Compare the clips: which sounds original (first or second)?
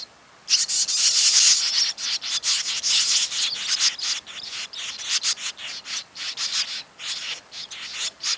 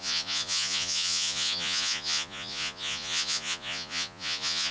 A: first